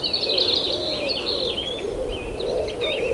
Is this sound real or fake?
real